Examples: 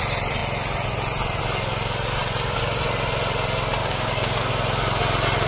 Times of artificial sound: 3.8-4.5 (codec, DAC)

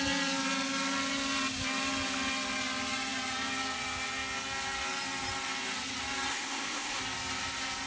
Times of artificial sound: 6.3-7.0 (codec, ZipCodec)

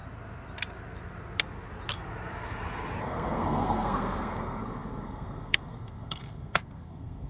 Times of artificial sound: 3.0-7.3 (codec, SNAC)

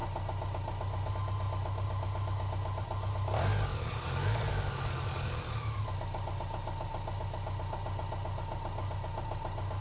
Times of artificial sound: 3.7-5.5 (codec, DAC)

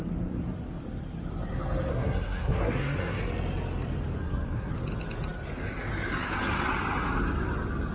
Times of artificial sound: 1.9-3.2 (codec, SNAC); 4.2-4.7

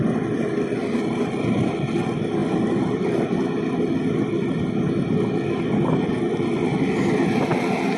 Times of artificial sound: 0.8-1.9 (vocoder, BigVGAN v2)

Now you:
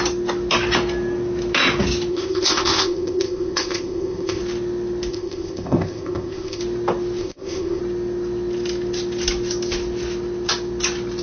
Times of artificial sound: 2.1-4.4 (codec, ZipCodec); 5.1-6.6; 7.2-7.8